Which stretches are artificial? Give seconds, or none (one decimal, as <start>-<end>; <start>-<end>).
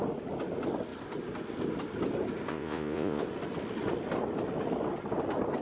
2.5-3.2